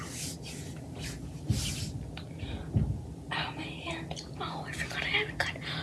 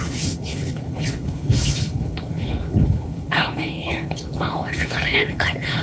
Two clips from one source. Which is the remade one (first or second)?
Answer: second